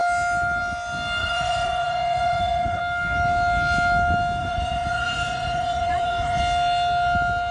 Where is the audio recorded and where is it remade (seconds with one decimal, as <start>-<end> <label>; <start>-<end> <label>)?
0.0-1.2 recorded; 1.2-2.8 remade; 2.8-4.4 recorded; 4.4-6.4 remade; 6.4-7.5 recorded

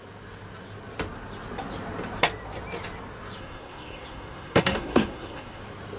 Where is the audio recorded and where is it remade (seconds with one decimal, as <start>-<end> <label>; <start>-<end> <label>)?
0.0-3.4 recorded; 3.4-5.6 remade; 5.6-6.0 recorded

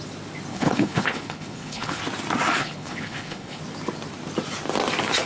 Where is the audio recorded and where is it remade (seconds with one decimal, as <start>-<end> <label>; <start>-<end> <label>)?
0.0-0.5 recorded; 0.5-2.0 remade; 2.0-2.6 recorded; 2.6-3.6 remade; 3.6-5.3 recorded

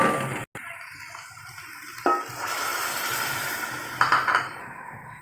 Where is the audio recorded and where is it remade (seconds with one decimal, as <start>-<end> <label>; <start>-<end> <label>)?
0.0-4.6 recorded; 4.6-5.2 remade

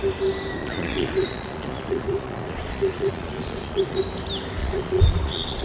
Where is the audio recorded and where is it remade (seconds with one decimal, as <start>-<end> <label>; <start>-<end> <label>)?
0.0-0.6 recorded; 0.6-4.0 remade; 4.0-4.6 recorded; 4.6-5.6 remade

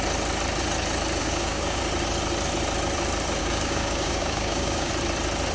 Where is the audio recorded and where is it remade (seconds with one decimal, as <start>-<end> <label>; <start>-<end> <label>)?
0.0-1.2 recorded; 1.2-1.8 remade; 1.8-3.4 recorded; 3.4-4.9 remade; 4.9-5.5 recorded